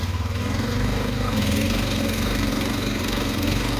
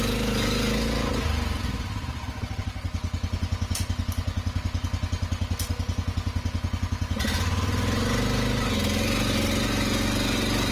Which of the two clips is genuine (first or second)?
second